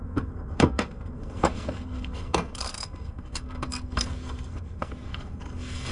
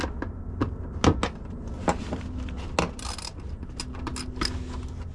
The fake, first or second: first